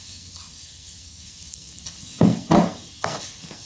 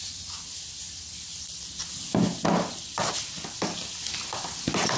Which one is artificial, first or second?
first